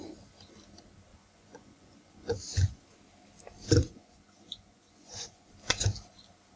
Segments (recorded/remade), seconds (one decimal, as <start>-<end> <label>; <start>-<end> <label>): 0.0-1.1 recorded; 1.1-2.8 remade; 2.8-3.8 recorded; 3.8-5.5 remade; 5.5-6.6 recorded